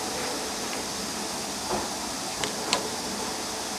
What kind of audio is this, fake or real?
real